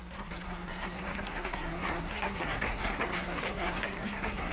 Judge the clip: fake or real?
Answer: fake